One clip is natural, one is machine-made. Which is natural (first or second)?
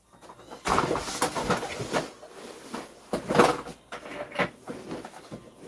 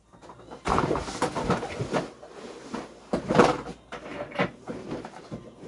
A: first